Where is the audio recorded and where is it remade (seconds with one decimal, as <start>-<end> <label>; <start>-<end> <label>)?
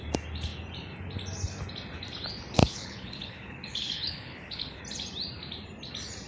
0.0-2.6 recorded; 2.6-4.8 remade; 4.8-6.3 recorded